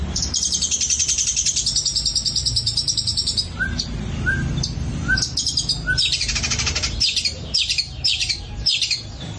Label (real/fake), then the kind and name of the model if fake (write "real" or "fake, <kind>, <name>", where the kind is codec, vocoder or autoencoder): fake, vocoder, BigVGAN v2